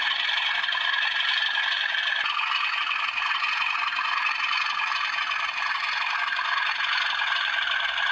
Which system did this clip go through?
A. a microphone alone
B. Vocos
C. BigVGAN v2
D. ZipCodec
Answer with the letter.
A